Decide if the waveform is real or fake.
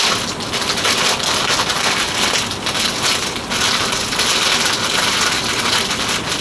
real